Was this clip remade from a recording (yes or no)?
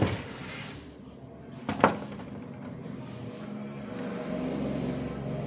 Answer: no